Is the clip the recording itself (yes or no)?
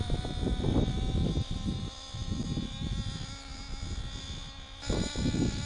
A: yes